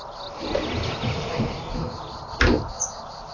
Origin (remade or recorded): remade